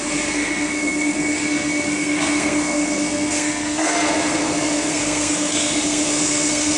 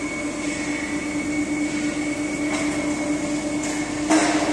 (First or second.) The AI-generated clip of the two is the first